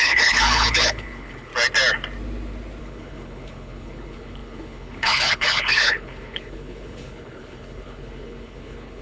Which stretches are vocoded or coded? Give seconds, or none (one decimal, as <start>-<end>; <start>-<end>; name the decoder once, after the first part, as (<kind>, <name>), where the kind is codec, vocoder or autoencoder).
0.0-1.5 (codec, HILCodec); 2.8-9.0